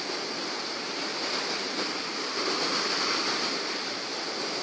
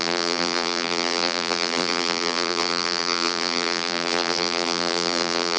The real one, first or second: first